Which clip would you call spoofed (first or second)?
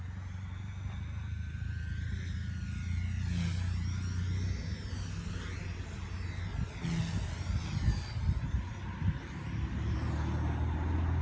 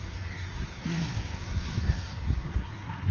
second